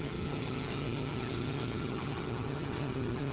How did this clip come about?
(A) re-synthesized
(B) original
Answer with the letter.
A